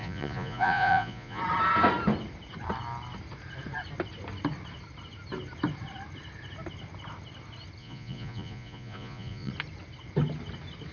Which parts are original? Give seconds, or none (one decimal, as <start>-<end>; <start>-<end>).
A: 1.4-7.8; 9.5-10.9